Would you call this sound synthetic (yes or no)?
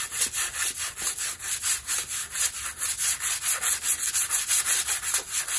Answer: no